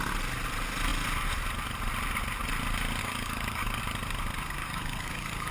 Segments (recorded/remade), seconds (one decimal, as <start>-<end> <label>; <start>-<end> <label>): 0.0-3.0 recorded; 3.0-3.8 remade; 3.8-4.6 recorded; 4.6-5.5 remade